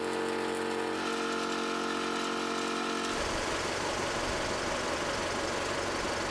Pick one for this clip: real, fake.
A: real